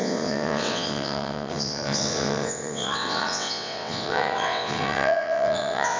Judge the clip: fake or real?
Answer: fake